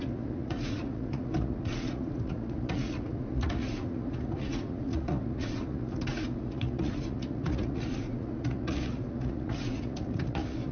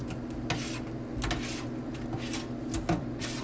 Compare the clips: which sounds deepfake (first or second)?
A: first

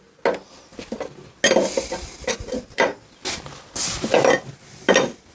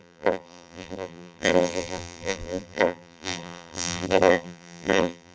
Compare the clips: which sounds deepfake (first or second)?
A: second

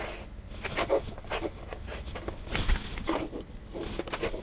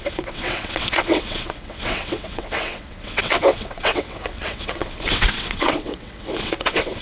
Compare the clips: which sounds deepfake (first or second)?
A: second